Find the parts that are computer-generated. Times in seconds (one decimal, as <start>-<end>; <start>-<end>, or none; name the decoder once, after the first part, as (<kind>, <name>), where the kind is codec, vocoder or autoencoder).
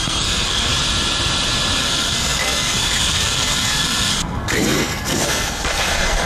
0.0-0.7 (codec, SNAC); 1.8-6.3